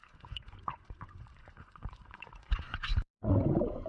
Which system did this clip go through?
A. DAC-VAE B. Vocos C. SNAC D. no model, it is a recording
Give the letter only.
B